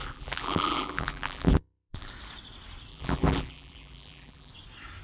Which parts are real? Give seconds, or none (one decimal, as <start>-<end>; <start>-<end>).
2.1-2.9; 4.5-5.0